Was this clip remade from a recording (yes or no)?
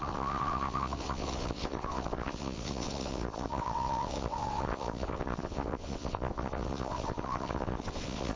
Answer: yes